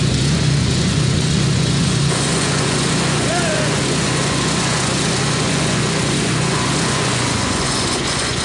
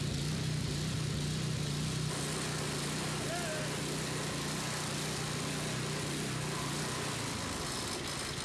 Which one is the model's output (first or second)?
first